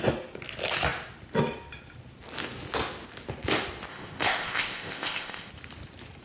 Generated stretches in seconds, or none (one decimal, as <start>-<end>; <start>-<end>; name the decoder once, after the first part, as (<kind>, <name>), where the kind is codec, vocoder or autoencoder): 3.9-5.5 (codec, ZipCodec)